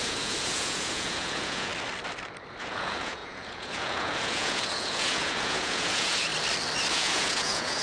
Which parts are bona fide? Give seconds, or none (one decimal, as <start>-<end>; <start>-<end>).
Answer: 1.7-2.6; 6.3-6.9